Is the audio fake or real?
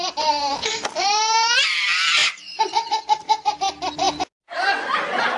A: real